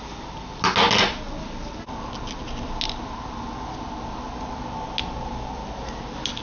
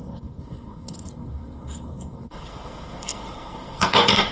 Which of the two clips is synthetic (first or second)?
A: second